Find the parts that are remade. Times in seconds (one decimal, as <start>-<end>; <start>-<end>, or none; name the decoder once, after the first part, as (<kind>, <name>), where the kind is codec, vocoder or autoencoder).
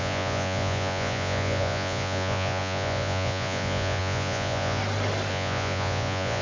0.0-4.8 (vocoder, Vocos); 5.3-6.4